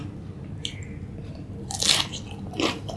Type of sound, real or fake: real